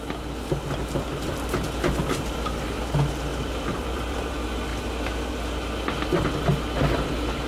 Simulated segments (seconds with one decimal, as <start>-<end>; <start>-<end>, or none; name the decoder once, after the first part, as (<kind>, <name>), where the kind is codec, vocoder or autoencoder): 3.3-4.3 (vocoder, BigVGAN v2)